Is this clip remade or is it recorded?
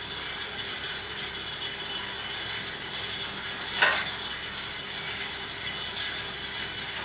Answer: recorded